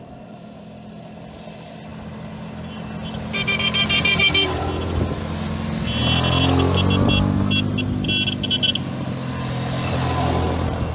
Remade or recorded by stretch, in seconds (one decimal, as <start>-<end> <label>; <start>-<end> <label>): 0.0-10.9 recorded

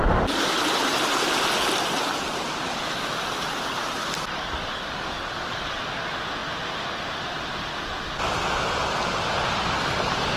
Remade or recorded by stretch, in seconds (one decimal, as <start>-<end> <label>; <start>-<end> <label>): 0.0-4.3 recorded; 4.3-5.8 remade; 5.8-10.4 recorded

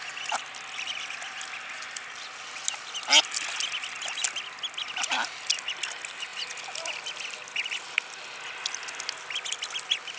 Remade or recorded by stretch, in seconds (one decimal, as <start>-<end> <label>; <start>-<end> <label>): 0.0-10.2 recorded

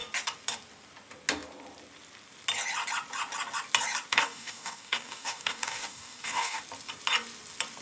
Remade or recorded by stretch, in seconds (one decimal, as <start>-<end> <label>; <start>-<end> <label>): 0.0-4.1 recorded; 4.1-6.6 remade; 6.6-7.8 recorded

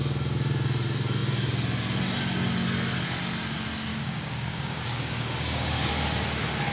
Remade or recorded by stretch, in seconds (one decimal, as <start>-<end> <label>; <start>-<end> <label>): 0.0-3.9 recorded; 3.9-5.9 remade; 5.9-6.7 recorded

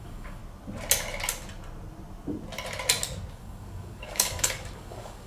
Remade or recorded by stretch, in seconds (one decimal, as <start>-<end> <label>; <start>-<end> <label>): 0.0-0.4 remade; 0.4-3.3 recorded; 3.3-5.3 remade

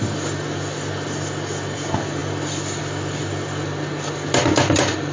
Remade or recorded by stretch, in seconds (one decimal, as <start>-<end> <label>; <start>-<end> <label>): 0.0-5.1 recorded